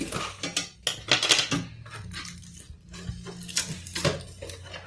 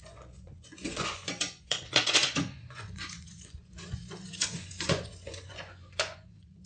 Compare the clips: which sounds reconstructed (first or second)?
second